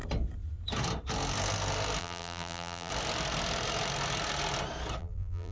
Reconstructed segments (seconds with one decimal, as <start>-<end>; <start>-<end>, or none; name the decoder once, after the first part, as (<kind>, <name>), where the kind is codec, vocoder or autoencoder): 2.0-2.9 (vocoder, BigVGAN v2); 5.0-5.5